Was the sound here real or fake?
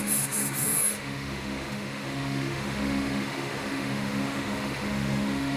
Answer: fake